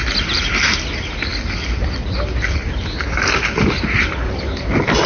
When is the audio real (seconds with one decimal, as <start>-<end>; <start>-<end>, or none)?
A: 0.0-5.1